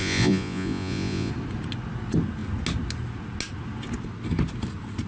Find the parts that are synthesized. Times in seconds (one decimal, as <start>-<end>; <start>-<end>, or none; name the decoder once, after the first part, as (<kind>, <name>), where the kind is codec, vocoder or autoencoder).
0.0-1.3 (vocoder, Vocos)